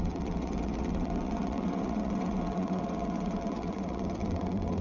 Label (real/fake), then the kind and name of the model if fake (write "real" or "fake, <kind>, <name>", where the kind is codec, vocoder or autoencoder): fake, vocoder, WaveNeXt